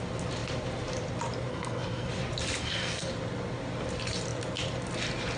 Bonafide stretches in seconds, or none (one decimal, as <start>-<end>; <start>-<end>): 0.0-1.5; 2.1-2.6; 3.1-5.4